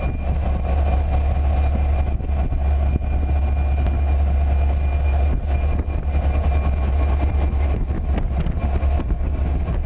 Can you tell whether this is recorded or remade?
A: recorded